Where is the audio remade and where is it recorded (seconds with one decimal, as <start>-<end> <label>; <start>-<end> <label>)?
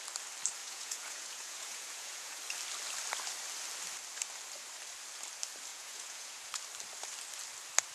0.0-0.6 recorded; 0.6-2.4 remade; 2.4-5.7 recorded; 5.7-6.5 remade; 6.5-7.9 recorded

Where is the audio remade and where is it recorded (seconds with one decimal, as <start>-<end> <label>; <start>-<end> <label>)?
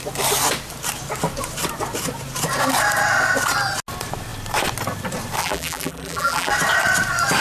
0.0-5.4 recorded; 5.4-6.5 remade; 6.5-7.4 recorded